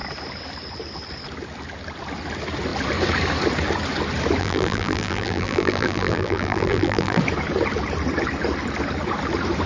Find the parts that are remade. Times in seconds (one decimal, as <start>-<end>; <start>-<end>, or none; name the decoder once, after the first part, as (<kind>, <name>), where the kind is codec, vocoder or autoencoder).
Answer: 4.4-7.2 (vocoder, BigVGAN v2)